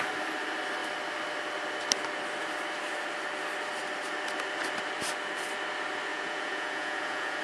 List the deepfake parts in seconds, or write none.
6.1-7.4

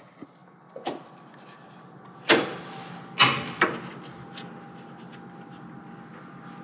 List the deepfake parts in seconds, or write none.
none

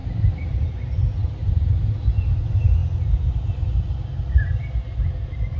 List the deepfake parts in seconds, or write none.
0.0-0.5; 1.2-1.7

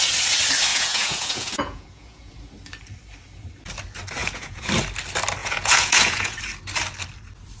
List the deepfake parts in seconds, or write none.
0.7-2.3; 4.2-4.7; 5.4-6.4

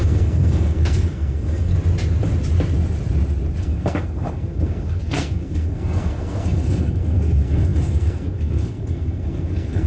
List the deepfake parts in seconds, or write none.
0.0-1.7; 3.6-9.9